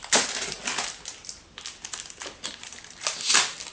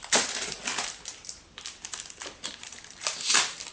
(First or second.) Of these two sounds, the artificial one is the second